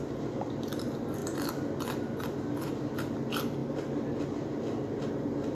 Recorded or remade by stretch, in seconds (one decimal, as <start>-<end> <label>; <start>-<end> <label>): 0.0-5.5 recorded